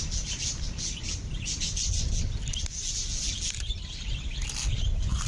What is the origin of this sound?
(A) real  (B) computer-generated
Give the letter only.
A